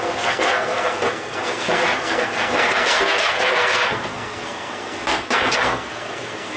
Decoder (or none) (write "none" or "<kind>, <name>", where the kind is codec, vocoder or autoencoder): codec, SNAC